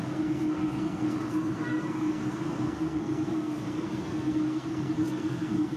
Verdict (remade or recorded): remade